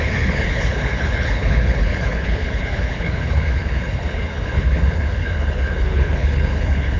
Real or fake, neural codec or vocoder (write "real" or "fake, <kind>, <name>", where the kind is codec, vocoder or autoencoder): fake, codec, HILCodec